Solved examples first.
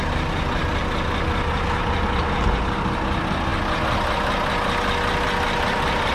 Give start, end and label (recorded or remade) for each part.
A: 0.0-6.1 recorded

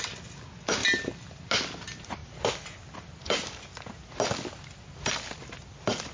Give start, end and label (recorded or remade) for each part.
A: 0.0-6.1 recorded

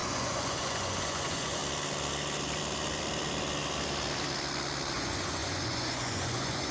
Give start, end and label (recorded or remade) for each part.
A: 0.0-1.6 remade; 1.6-4.9 recorded; 4.9-6.7 remade

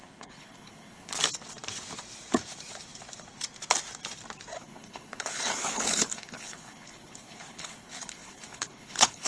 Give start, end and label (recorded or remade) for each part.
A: 0.0-1.2 remade; 1.2-4.6 recorded; 4.6-9.3 remade

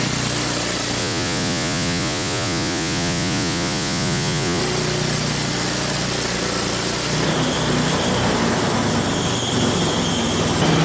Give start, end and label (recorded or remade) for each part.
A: 0.0-1.0 recorded; 1.0-4.6 remade; 4.6-10.8 recorded